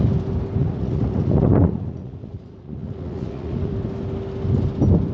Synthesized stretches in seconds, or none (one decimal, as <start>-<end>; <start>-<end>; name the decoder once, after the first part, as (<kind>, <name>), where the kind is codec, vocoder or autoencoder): 0.6-3.7 (vocoder, Vocos)